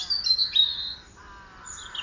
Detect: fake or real real